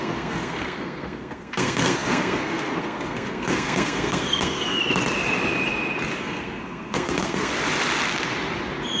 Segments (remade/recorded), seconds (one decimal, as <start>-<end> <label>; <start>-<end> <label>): 0.0-4.8 remade; 4.8-6.2 recorded; 6.2-7.5 remade; 7.5-9.0 recorded